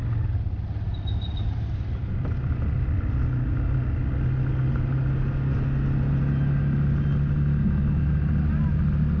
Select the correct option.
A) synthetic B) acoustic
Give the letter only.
B